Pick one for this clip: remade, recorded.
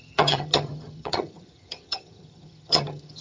remade